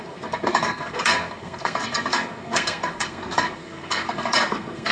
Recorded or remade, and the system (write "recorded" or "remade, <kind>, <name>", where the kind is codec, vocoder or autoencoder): remade, codec, SNAC